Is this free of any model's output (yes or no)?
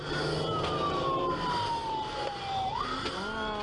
yes